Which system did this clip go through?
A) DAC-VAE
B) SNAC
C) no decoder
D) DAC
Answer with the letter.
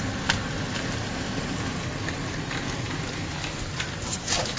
C